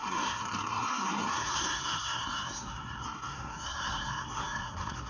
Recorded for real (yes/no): no